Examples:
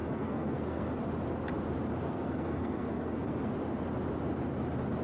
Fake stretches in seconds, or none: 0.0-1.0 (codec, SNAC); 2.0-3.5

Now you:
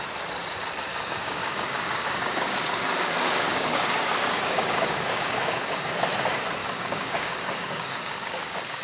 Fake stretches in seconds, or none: 0.9-5.9 (codec, DAC); 6.6-8.8

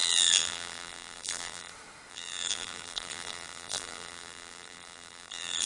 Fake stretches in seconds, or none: 0.0-1.7 (vocoder, BigVGAN v2); 2.1-5.7

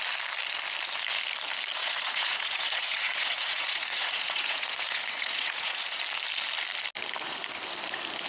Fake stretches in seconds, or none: 1.8-6.0 (vocoder, Vocos)

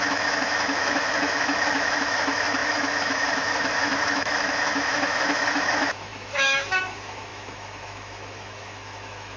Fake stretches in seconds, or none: 0.0-9.4 (autoencoder, DAC-VAE)

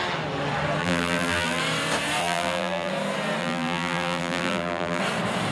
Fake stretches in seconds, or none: 0.8-1.6 (vocoder, BigVGAN v2); 2.2-2.9; 3.4-5.0

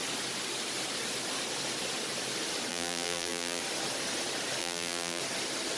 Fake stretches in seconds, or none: 2.7-3.6 (vocoder, BigVGAN v2); 4.6-5.2